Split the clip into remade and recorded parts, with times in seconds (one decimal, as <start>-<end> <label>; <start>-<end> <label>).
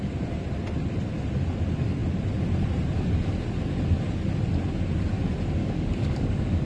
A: 0.0-5.6 recorded; 5.6-6.7 remade